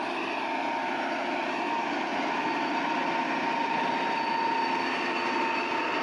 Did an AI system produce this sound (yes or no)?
no